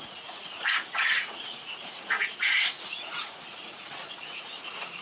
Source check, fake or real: fake